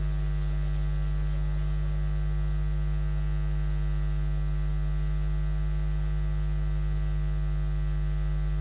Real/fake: real